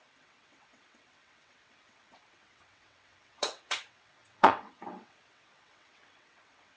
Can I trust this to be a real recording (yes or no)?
no